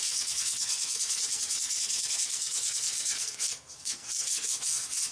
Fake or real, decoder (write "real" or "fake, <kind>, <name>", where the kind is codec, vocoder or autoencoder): fake, codec, SNAC